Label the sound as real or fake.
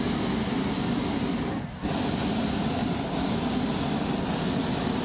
real